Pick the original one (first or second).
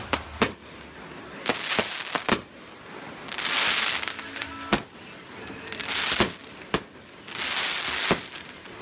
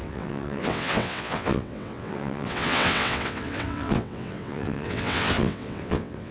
first